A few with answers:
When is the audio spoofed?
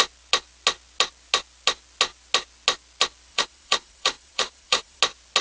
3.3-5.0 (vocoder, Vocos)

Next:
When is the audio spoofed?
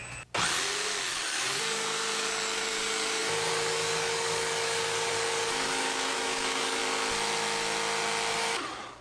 1.1-6.8 (codec, DAC); 8.3-9.0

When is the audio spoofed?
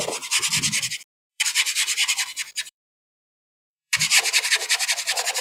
1.3-4.5 (vocoder, BigVGAN v2)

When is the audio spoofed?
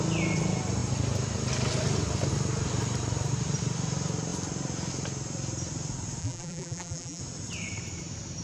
6.2-7.2 (vocoder, BigVGAN v2)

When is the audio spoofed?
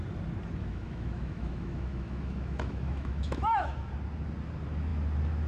0.6-3.9 (autoencoder, DAC-VAE)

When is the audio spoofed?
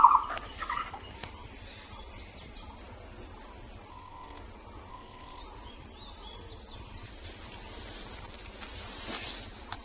3.9-4.4 (codec, SNAC); 4.9-5.4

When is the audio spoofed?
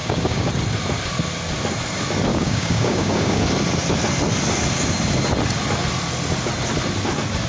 0.0-0.5 (codec, DAC); 2.3-3.4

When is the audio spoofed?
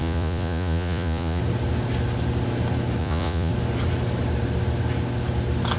0.0-1.4 (vocoder, Vocos); 3.0-3.5